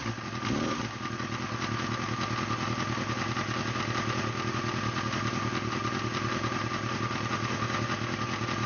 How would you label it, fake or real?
real